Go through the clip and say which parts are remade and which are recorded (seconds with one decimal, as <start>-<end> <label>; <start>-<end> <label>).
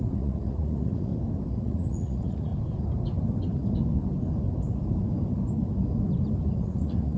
0.0-1.1 remade; 1.1-1.6 recorded; 1.6-2.5 remade; 2.5-6.5 recorded; 6.5-7.2 remade